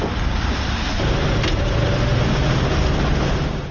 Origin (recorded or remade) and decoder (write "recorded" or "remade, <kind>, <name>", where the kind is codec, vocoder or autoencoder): recorded